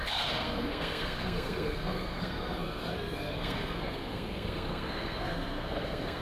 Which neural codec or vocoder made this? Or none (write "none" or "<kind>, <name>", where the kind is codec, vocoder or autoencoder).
codec, SNAC